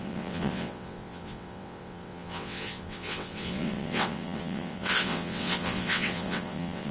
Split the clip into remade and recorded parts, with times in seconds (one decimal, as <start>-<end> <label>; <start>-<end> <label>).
0.0-6.9 remade